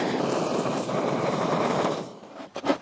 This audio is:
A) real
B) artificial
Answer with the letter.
B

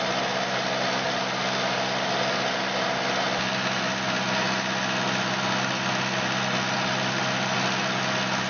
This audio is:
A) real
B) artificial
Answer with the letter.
A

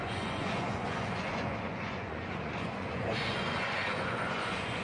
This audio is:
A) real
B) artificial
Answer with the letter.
B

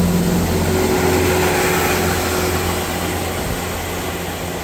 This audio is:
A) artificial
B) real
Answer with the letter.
B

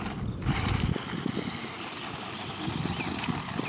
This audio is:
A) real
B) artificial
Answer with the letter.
A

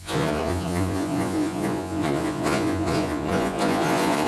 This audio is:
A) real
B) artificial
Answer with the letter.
B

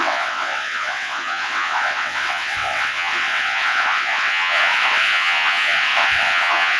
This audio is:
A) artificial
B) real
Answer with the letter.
A